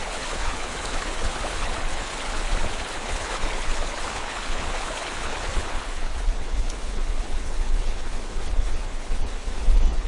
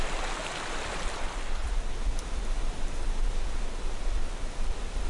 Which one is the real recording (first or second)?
second